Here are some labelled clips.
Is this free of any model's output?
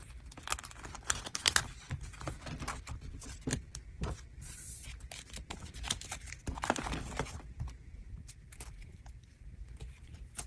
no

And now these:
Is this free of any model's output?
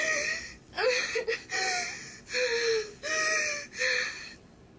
no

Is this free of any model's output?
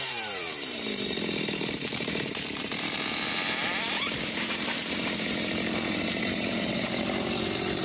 no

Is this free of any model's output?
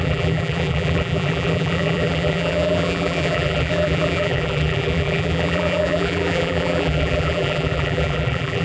no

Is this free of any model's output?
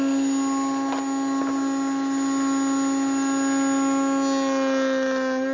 yes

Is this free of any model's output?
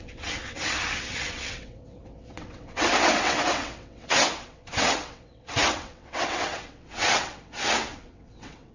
no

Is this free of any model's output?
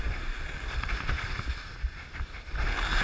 yes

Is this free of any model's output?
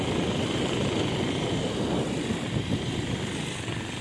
yes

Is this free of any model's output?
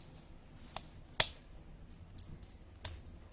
yes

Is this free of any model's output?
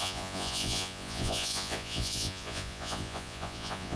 no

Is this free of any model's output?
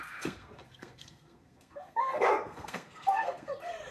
no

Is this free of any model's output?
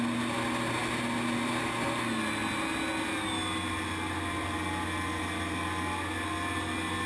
yes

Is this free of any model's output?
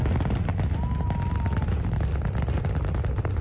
yes